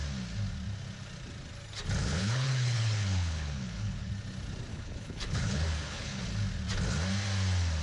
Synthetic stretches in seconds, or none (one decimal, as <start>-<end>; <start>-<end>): 2.0-4.1; 4.7-6.2

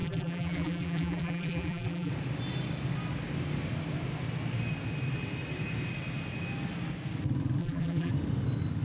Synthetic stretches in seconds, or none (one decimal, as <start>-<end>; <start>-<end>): 0.0-2.1; 7.6-8.1

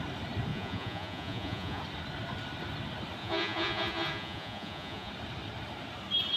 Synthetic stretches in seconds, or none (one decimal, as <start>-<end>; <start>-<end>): 0.5-1.8; 3.2-5.1

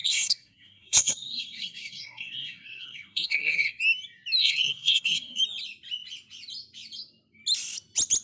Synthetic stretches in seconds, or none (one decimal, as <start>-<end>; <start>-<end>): 0.0-3.8; 4.4-5.4

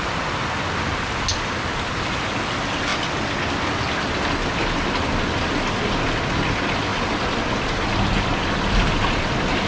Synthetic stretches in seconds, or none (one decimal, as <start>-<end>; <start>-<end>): none